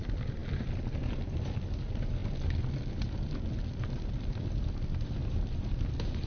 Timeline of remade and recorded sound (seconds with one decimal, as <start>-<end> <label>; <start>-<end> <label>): 0.0-6.3 recorded